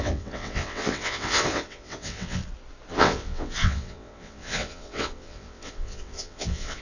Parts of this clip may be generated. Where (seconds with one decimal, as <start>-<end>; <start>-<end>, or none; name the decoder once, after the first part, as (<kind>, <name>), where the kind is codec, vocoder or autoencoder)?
0.0-2.4 (vocoder, WaveNeXt); 2.9-6.8